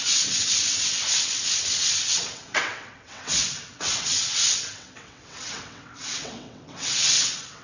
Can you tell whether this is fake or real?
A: fake